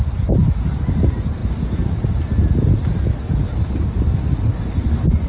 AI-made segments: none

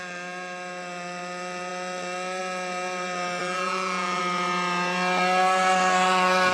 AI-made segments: 3.4-4.2 (vocoder, Vocos)